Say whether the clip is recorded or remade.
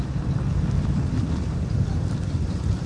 remade